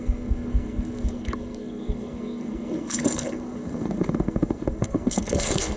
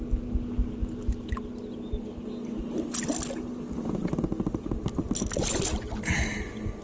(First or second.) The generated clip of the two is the first